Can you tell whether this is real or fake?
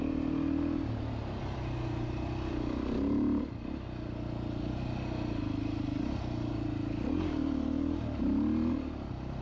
real